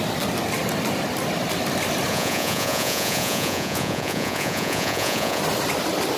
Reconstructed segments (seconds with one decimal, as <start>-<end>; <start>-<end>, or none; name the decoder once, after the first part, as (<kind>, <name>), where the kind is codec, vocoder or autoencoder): 2.1-5.4 (vocoder, Vocos)